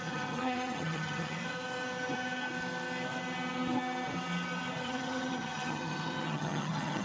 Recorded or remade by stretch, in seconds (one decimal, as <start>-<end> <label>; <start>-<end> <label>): 0.0-1.4 remade; 1.4-4.8 recorded; 4.8-7.0 remade